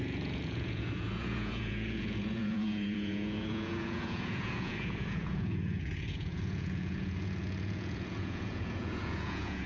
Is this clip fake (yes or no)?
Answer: yes